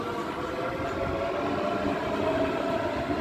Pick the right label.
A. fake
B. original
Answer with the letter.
B